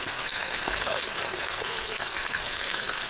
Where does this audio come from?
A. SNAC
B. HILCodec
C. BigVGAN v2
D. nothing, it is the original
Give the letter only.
A